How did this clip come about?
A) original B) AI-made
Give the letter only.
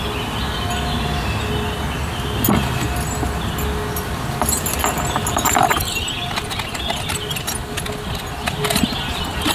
A